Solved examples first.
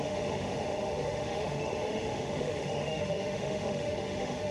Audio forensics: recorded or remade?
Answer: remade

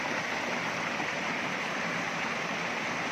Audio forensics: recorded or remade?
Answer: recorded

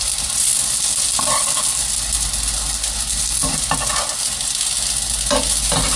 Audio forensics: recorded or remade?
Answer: recorded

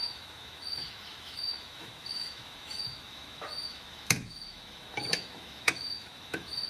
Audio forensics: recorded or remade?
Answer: remade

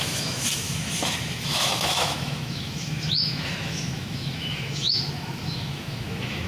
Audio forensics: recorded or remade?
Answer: remade